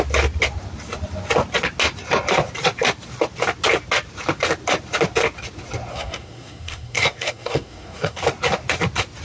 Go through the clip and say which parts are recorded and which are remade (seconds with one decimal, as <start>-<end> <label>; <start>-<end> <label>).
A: 0.0-5.9 recorded; 5.9-8.2 remade; 8.2-9.2 recorded